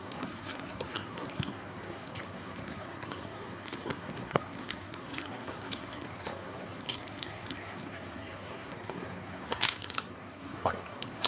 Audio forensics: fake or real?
fake